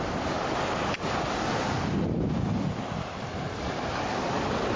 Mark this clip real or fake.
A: real